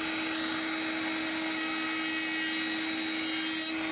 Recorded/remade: recorded